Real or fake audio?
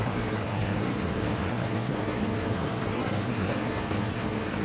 fake